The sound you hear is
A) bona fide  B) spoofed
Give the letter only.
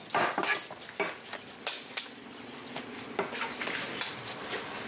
A